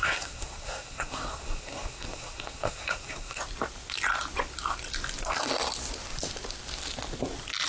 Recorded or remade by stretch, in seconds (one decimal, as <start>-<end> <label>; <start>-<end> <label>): 0.0-3.4 remade; 3.4-7.7 recorded

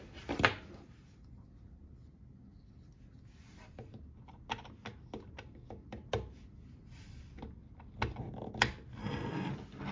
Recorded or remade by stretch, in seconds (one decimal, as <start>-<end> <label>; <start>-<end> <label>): 0.0-9.0 recorded; 9.0-9.5 remade; 9.5-9.9 recorded

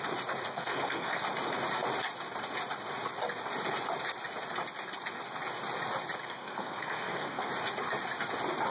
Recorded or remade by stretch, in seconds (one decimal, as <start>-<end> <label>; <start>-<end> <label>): 0.0-0.5 recorded; 0.5-1.2 remade; 1.2-6.2 recorded; 6.2-7.5 remade; 7.5-8.7 recorded

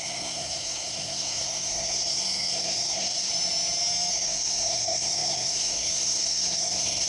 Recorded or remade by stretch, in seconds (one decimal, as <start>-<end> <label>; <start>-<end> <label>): 0.0-3.3 remade; 3.3-4.1 recorded; 4.1-7.1 remade

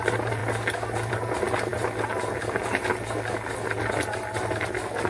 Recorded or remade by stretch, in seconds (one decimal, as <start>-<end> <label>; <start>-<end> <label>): 0.0-5.1 recorded

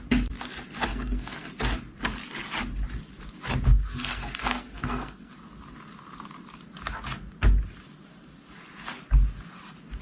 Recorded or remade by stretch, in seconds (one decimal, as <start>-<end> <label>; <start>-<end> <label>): 0.0-0.9 recorded; 0.9-1.5 remade; 1.5-3.7 recorded; 3.7-5.3 remade; 5.3-10.0 recorded

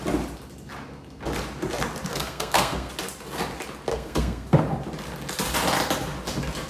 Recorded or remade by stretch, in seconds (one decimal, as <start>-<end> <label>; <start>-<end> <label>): 0.0-2.1 recorded; 2.1-2.9 remade; 2.9-3.9 recorded; 3.9-4.6 remade; 4.6-6.7 recorded

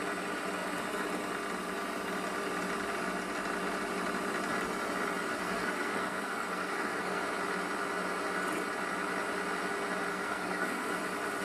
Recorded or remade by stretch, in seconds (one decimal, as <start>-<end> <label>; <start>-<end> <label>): 0.0-5.2 recorded; 5.2-7.2 remade; 7.2-10.1 recorded; 10.1-11.0 remade; 11.0-11.4 recorded